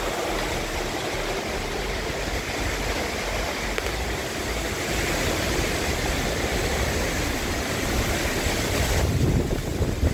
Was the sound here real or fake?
real